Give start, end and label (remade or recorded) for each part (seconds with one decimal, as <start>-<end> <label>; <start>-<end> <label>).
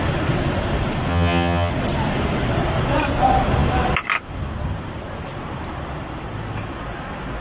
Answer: 0.0-1.1 recorded; 1.1-1.7 remade; 1.7-7.4 recorded